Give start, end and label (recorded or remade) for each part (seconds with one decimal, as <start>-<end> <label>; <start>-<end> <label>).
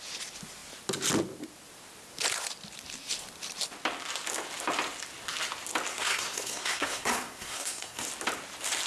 0.0-5.9 recorded; 5.9-8.0 remade; 8.0-8.9 recorded